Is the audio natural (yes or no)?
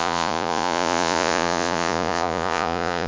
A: no